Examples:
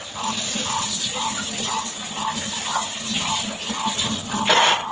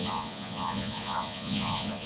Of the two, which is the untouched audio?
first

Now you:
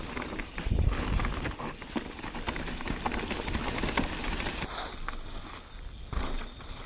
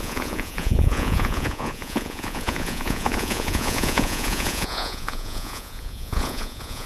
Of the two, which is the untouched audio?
first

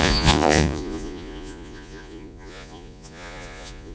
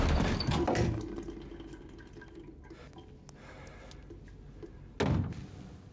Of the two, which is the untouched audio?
second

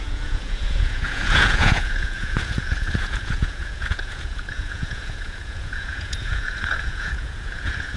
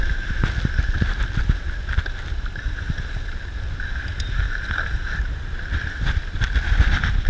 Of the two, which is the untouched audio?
second